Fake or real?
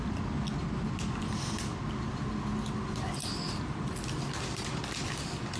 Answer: real